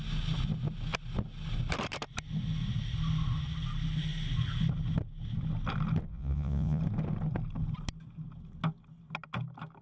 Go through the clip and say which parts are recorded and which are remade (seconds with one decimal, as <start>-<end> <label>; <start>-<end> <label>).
0.0-6.1 recorded; 6.1-6.8 remade; 6.8-9.8 recorded